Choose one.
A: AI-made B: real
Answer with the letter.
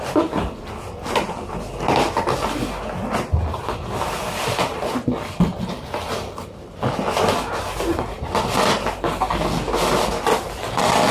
B